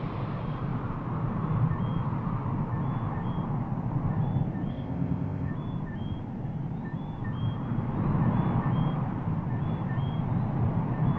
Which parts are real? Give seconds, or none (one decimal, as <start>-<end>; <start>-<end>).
0.0-4.7; 5.5-11.2